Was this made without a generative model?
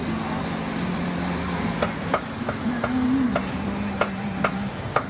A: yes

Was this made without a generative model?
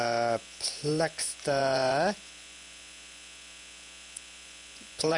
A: no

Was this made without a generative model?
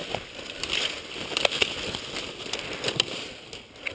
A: yes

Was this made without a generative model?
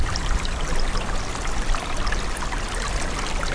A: yes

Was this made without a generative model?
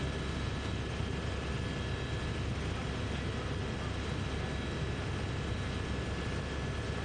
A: yes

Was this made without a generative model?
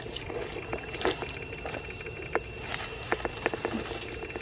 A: yes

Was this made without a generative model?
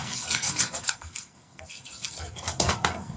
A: no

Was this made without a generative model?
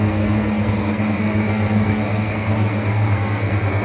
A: no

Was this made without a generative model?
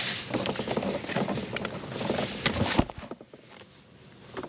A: yes